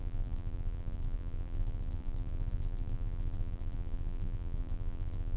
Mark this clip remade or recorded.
remade